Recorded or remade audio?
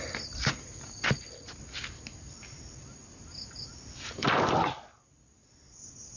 recorded